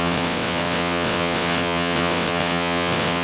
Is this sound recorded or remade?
remade